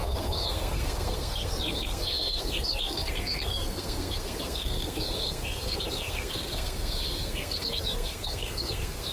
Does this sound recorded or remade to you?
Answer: remade